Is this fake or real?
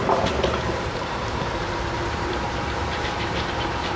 fake